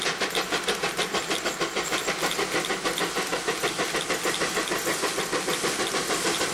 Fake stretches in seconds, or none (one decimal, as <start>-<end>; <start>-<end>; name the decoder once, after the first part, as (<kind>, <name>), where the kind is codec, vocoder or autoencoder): none